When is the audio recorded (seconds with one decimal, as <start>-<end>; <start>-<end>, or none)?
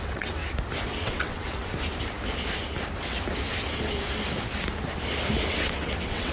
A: 0.4-0.9; 1.7-5.5